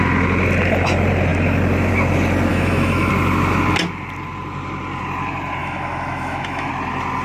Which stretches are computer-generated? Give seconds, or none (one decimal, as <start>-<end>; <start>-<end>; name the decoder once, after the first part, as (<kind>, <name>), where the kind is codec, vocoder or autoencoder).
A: 2.5-3.1 (autoencoder, DAC-VAE); 5.6-6.7